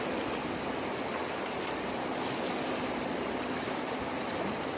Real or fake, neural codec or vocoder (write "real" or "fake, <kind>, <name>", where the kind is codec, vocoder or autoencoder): real